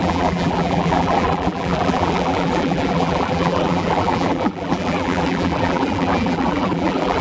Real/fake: fake